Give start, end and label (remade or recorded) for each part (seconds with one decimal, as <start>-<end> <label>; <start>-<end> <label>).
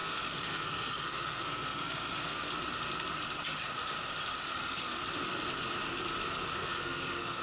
0.0-2.5 remade; 2.5-4.5 recorded; 4.5-5.0 remade; 5.0-6.6 recorded; 6.6-7.4 remade